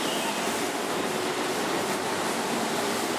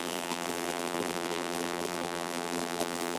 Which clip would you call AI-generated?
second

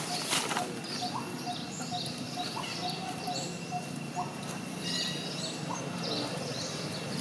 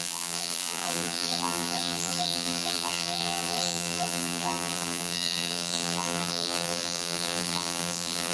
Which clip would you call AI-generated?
second